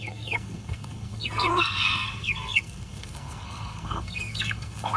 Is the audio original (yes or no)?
no